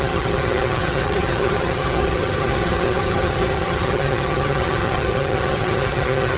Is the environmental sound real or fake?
fake